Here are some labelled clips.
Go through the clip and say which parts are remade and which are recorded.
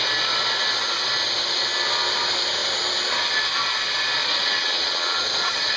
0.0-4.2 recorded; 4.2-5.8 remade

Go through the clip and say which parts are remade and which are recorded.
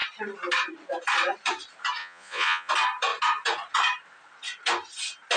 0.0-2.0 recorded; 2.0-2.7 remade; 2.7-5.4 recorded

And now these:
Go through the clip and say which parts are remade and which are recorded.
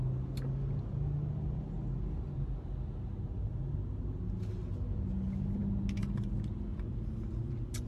0.0-7.9 recorded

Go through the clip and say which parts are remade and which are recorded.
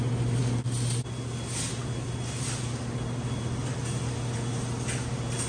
0.0-5.5 recorded